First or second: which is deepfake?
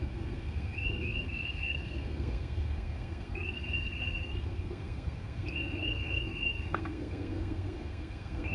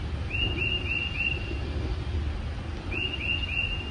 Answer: first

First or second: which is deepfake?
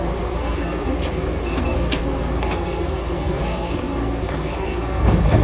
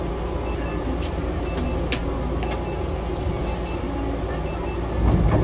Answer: first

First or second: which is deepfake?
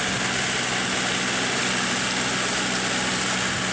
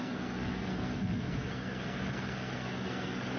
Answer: second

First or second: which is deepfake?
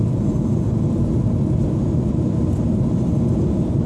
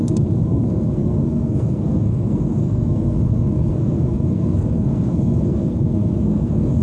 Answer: second